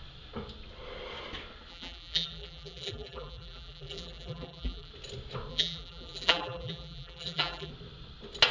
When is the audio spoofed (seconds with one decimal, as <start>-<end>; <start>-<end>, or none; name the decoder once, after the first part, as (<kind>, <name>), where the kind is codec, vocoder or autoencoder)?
1.7-4.9 (vocoder, BigVGAN v2); 5.5-7.7